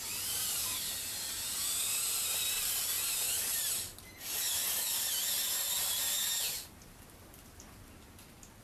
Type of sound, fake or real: real